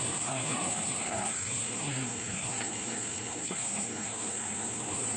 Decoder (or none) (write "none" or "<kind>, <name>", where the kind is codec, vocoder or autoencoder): codec, SNAC